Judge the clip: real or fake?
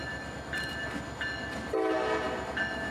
real